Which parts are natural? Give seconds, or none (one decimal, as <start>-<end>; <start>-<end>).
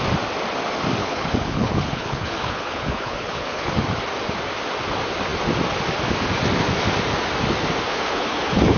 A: 0.0-1.0; 3.8-7.9